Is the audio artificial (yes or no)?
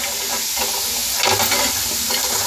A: no